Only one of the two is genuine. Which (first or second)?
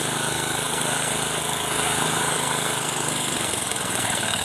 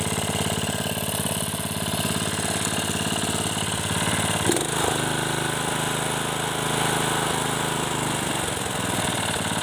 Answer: second